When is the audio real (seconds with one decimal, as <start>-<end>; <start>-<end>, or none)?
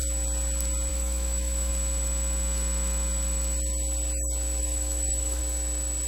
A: 0.0-0.9; 1.7-4.6; 5.4-6.1